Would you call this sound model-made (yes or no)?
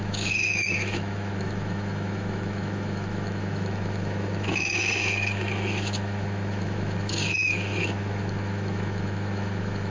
yes